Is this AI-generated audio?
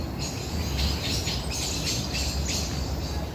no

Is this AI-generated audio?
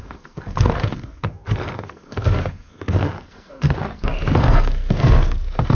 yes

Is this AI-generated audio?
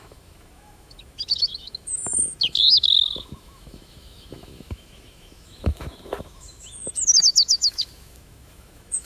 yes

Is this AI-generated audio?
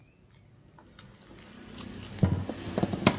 no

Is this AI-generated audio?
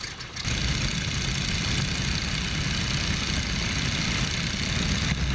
no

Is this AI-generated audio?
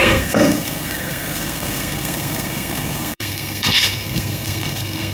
yes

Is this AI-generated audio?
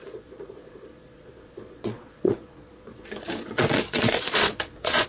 yes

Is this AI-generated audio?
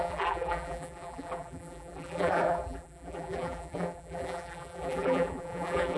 yes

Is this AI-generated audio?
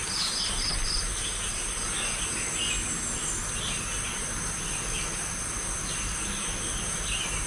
no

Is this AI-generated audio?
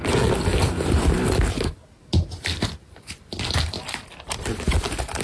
no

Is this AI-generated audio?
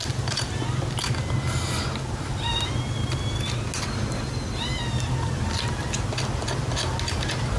no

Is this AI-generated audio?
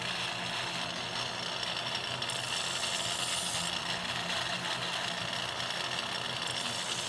no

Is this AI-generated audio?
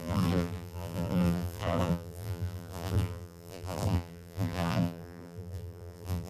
yes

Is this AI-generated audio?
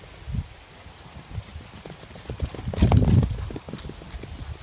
no